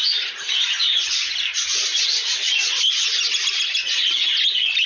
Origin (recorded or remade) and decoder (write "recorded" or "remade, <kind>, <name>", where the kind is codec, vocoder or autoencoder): recorded